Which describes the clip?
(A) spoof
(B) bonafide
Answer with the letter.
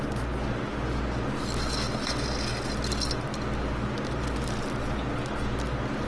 B